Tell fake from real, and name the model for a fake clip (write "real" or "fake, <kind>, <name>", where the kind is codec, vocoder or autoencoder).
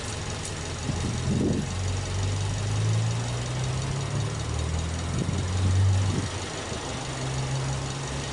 real